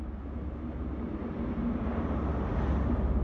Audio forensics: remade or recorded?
recorded